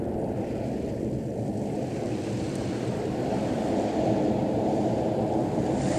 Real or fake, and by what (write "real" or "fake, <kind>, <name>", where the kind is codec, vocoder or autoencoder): fake, vocoder, BigVGAN v2